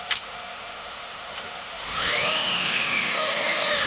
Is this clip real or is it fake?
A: fake